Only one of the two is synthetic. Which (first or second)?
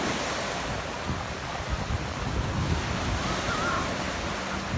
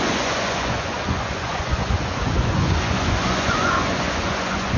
second